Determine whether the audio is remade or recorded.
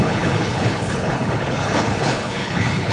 remade